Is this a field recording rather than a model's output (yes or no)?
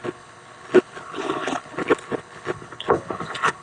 no